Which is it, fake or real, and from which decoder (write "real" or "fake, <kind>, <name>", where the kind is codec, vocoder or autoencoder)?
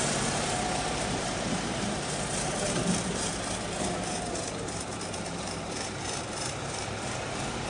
fake, vocoder, BigVGAN v2